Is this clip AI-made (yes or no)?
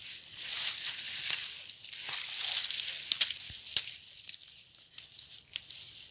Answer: no